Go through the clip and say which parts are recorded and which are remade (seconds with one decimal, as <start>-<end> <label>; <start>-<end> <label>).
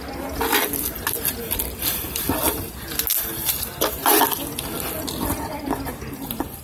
0.0-6.6 recorded